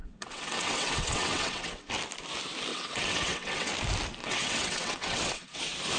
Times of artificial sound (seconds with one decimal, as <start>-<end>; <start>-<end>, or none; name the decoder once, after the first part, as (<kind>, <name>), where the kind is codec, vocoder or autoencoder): 0.0-1.9 (vocoder, WaveNeXt); 2.7-3.7; 4.2-5.6